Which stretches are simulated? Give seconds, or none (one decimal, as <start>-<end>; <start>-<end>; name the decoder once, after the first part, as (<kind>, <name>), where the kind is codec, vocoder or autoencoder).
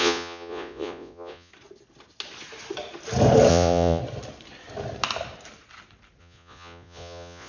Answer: 0.0-1.5 (vocoder, Vocos); 3.5-4.0; 6.2-7.5